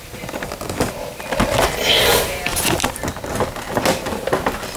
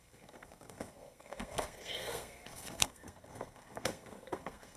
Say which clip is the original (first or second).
first